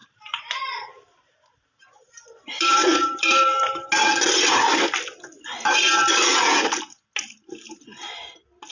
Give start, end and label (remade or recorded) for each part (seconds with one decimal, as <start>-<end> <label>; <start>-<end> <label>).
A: 0.0-3.9 remade; 3.9-8.7 recorded